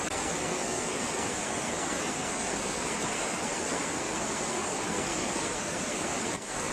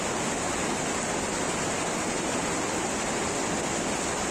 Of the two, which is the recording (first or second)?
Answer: second